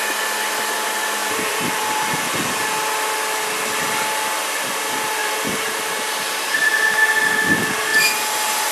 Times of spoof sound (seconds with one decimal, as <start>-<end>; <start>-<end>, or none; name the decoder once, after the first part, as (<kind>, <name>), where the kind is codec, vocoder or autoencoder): 1.2-2.3 (vocoder, BigVGAN v2); 5.2-6.8